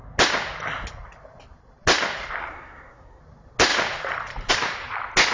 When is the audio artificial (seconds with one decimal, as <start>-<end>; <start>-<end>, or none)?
2.4-3.2